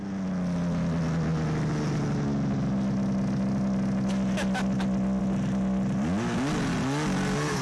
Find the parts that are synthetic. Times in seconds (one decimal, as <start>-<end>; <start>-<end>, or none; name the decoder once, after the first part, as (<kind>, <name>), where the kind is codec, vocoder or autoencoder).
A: none